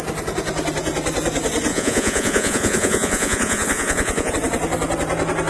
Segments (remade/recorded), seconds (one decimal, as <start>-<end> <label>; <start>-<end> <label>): 0.0-1.7 recorded; 1.7-4.3 remade; 4.3-5.5 recorded